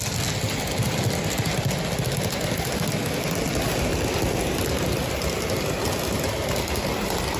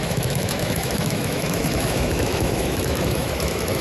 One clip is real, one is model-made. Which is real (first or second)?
first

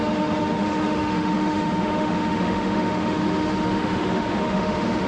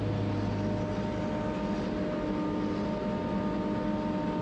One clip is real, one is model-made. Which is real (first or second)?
second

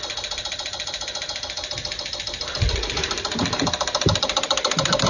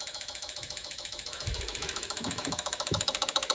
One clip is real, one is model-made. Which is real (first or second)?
first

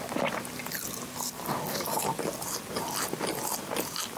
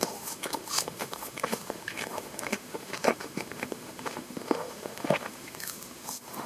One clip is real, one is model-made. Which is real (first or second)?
first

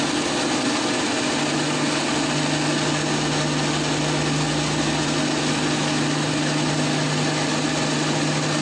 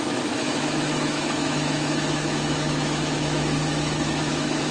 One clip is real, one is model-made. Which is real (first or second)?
first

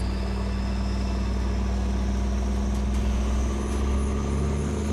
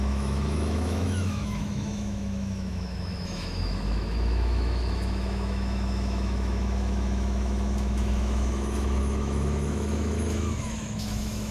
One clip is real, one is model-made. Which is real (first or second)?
first